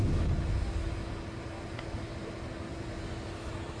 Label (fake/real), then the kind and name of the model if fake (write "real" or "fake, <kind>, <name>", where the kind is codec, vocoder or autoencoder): real